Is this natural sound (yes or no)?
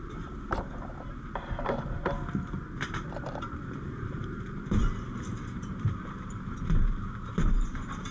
no